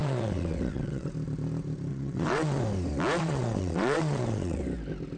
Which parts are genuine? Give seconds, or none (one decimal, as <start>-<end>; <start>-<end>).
1.1-1.9; 2.6-3.2; 4.6-5.2